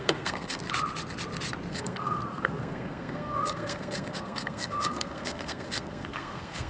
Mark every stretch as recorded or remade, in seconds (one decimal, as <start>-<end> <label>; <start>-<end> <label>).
0.0-0.6 remade; 0.6-1.7 recorded; 1.7-6.7 remade